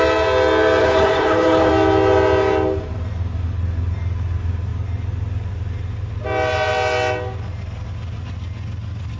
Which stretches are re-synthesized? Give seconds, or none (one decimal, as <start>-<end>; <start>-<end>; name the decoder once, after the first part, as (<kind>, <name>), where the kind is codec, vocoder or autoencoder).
0.8-1.7 (codec, HILCodec)